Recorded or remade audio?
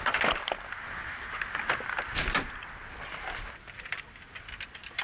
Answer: recorded